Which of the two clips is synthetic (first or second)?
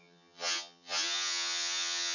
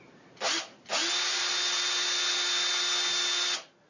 first